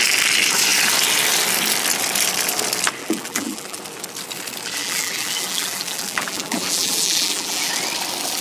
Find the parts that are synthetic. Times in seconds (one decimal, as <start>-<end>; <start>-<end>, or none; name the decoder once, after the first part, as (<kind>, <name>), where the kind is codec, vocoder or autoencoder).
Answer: 3.0-3.8 (vocoder, BigVGAN v2); 4.8-7.7